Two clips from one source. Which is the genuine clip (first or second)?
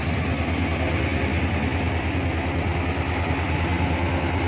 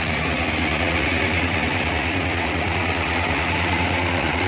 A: first